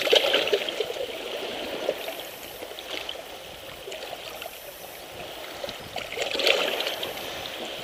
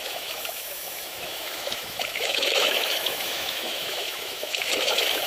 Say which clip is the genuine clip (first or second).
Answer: first